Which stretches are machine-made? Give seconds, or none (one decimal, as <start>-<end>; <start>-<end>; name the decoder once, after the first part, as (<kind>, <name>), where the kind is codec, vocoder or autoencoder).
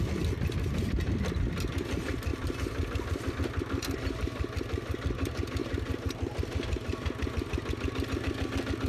none